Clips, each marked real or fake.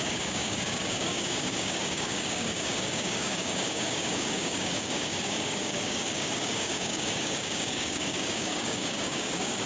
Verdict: fake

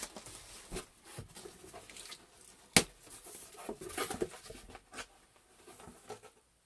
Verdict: real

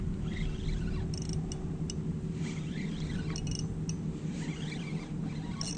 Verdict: real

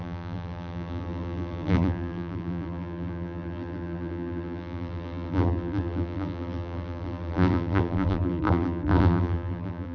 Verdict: fake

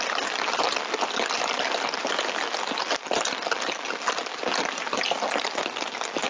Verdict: real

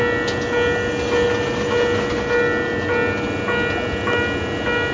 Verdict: real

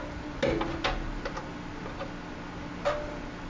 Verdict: real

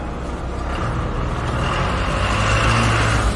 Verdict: real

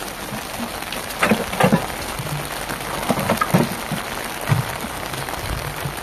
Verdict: real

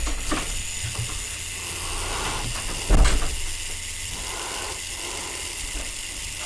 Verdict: real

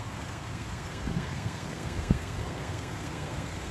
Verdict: fake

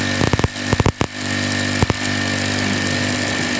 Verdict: real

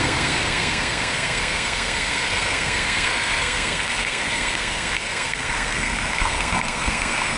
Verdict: fake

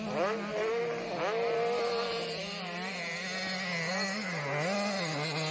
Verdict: real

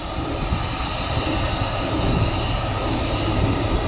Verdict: real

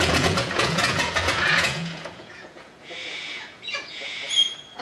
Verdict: fake